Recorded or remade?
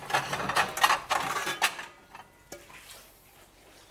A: recorded